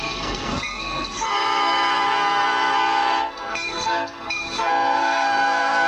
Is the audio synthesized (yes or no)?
yes